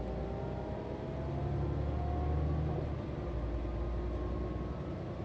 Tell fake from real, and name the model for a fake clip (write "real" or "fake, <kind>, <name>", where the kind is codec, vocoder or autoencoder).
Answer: real